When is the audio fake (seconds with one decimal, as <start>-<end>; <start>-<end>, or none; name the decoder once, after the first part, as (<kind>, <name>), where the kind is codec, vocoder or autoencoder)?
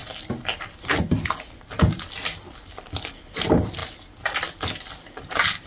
none